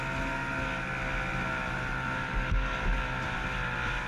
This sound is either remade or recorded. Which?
recorded